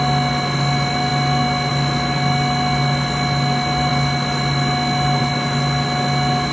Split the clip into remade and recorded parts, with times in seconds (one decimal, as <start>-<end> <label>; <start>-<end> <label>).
0.0-6.5 recorded